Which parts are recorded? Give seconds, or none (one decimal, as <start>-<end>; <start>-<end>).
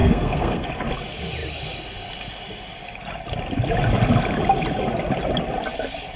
0.7-6.2